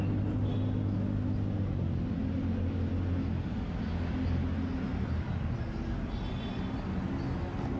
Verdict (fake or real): real